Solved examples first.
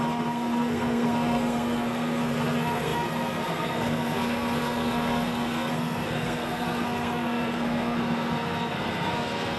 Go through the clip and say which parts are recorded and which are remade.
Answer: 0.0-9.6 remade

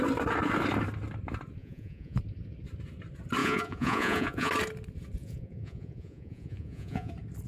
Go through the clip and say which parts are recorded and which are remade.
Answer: 0.0-1.6 recorded; 1.6-2.2 remade; 2.2-3.4 recorded; 3.4-4.5 remade; 4.5-5.2 recorded; 5.2-7.1 remade; 7.1-7.5 recorded

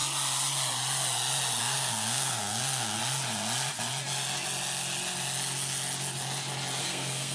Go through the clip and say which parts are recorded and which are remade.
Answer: 0.0-1.6 recorded; 1.6-3.0 remade; 3.0-6.8 recorded; 6.8-7.3 remade

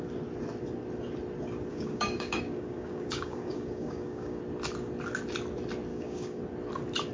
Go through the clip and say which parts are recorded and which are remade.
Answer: 0.0-1.7 recorded; 1.7-4.4 remade; 4.4-5.9 recorded; 5.9-6.4 remade; 6.4-7.1 recorded

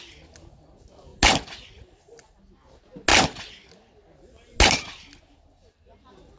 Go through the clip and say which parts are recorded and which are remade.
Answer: 0.0-6.4 recorded

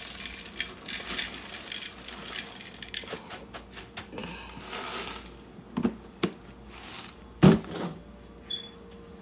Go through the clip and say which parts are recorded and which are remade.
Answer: 0.0-9.2 recorded